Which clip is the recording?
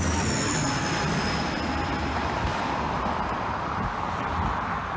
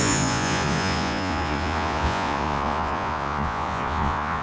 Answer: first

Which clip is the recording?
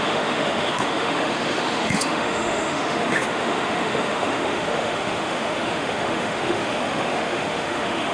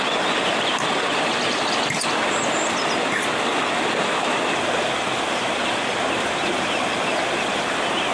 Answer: second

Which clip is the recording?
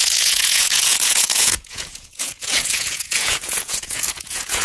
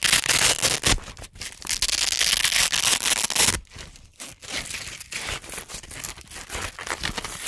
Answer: second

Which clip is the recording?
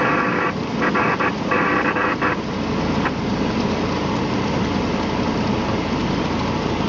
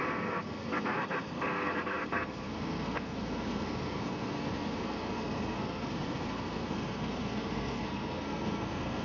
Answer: first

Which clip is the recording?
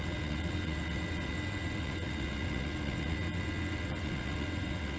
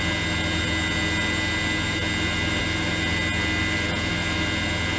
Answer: second